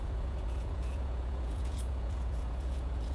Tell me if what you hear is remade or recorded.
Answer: remade